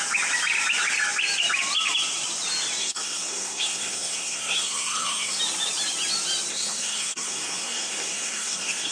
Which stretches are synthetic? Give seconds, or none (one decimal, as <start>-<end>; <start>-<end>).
2.8-5.4; 6.5-8.9